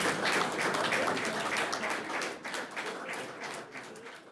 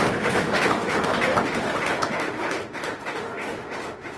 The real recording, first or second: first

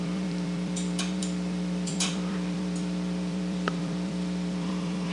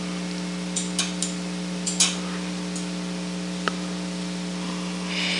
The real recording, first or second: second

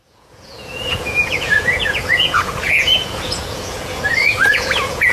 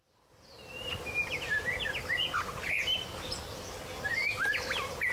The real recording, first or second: second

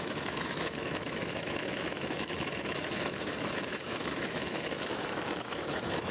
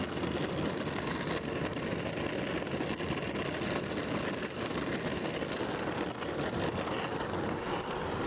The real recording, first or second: second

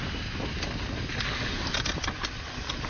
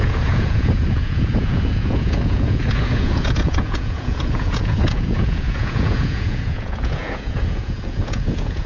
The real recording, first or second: first